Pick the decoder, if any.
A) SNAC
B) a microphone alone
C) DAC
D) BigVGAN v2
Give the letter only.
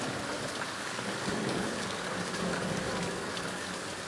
C